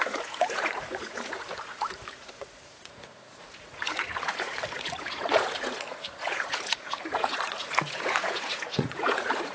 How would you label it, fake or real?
fake